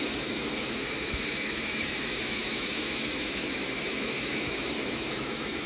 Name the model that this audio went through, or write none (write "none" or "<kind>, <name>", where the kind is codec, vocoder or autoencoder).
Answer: autoencoder, DAC-VAE